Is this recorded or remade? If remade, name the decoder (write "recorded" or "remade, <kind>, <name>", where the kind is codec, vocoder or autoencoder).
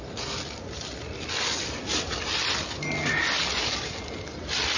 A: recorded